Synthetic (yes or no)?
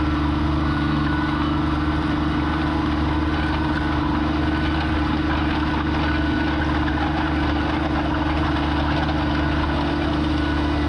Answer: no